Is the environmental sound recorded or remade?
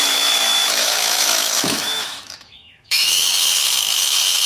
remade